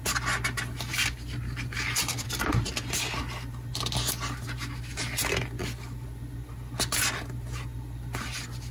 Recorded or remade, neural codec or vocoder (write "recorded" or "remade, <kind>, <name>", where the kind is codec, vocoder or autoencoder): recorded